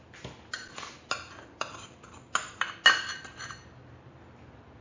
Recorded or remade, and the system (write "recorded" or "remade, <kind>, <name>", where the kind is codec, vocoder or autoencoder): recorded